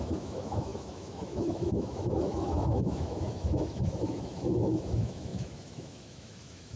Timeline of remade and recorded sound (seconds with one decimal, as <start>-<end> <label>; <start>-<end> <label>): 0.0-6.8 remade